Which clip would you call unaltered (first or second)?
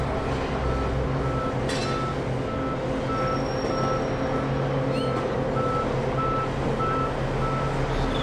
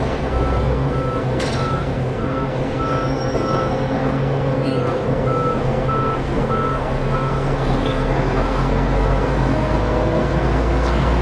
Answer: first